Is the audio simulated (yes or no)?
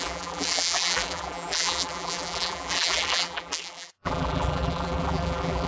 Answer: yes